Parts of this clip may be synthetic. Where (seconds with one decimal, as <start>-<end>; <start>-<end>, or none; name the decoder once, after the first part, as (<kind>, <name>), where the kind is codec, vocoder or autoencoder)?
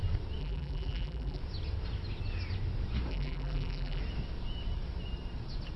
0.4-1.4 (vocoder, BigVGAN v2); 3.1-4.0